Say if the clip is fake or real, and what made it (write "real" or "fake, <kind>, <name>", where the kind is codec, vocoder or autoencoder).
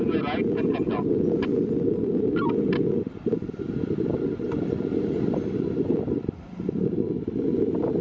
real